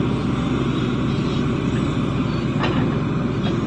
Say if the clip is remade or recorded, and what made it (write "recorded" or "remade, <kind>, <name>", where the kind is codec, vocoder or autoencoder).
recorded